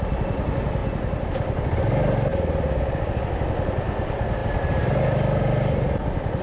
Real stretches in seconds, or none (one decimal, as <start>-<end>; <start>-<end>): 0.0-6.4